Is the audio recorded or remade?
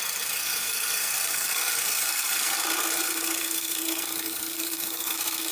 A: remade